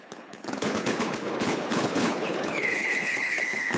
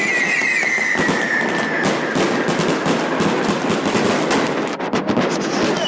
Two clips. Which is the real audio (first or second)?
second